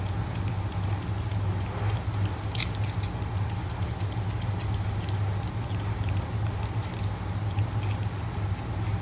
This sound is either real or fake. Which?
real